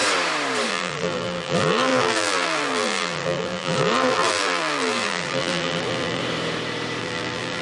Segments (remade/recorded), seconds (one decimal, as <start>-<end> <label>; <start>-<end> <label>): 0.0-0.7 recorded; 0.7-6.2 remade; 6.2-7.0 recorded; 7.0-7.6 remade